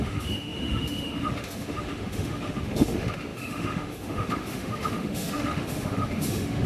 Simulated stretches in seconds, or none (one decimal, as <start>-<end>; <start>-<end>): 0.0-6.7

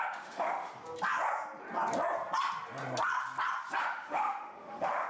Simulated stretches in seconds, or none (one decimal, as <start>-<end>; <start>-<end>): 0.0-0.7; 3.8-5.1

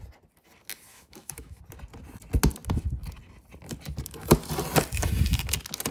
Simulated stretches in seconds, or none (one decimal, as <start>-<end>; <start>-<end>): 0.9-1.6

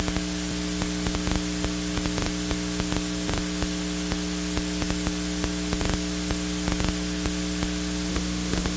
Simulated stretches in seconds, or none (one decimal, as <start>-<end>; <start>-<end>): 8.1-8.8